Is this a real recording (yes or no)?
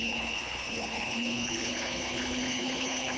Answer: no